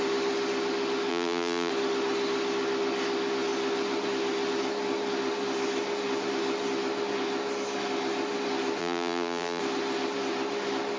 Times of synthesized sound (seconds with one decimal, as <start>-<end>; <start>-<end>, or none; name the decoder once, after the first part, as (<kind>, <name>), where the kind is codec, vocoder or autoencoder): 1.1-1.7 (vocoder, BigVGAN v2); 8.8-9.6